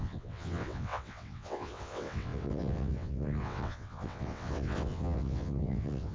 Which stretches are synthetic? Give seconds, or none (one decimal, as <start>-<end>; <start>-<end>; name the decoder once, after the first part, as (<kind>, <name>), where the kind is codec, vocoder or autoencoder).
0.0-6.1 (vocoder, WaveNeXt)